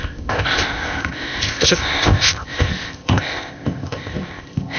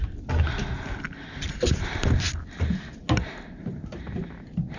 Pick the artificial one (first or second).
first